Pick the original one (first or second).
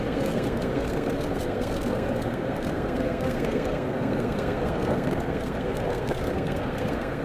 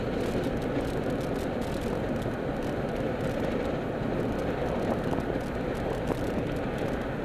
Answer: second